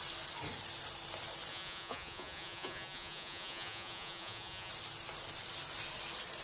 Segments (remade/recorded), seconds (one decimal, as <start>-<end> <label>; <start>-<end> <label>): 0.0-1.5 recorded; 1.5-4.7 remade; 4.7-6.4 recorded